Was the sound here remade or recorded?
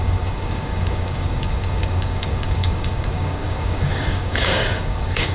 remade